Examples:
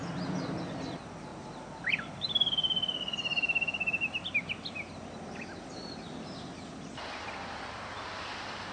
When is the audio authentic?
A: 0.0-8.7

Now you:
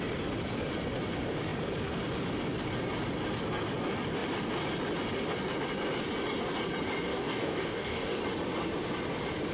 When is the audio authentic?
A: 0.0-7.1; 8.2-9.5